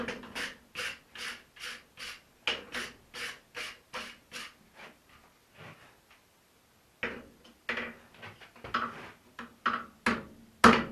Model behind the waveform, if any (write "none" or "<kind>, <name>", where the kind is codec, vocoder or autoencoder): none